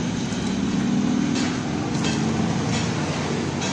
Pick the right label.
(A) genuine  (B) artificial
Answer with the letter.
A